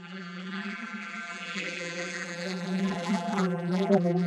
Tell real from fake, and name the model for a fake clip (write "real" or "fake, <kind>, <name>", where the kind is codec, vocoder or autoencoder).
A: fake, vocoder, BigVGAN v2